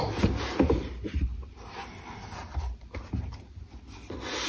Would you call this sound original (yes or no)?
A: no